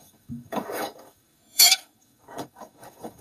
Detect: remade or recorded remade